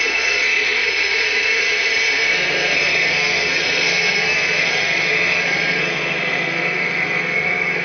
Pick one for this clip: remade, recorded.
remade